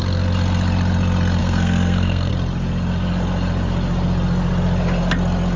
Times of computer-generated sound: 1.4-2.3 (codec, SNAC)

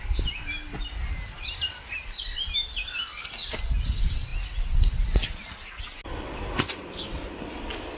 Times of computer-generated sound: none

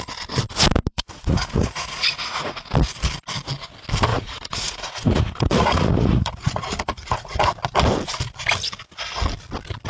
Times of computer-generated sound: 0.9-2.6 (vocoder, Vocos); 4.1-7.4

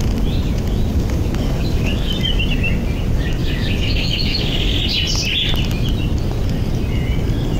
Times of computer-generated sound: 0.9-2.1 (codec, DAC); 3.4-4.8

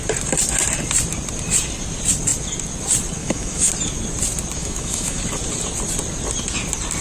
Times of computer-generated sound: 3.2-3.7 (autoencoder, DAC-VAE); 4.6-5.2

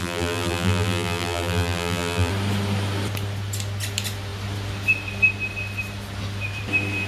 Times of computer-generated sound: 0.0-2.3 (vocoder, BigVGAN v2)